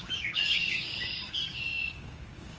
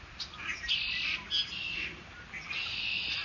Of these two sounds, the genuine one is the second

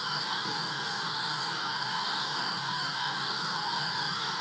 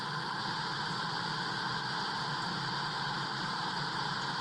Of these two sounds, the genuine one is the second